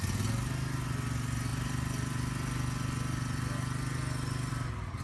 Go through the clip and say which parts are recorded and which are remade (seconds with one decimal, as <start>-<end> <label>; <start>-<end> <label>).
0.0-5.0 recorded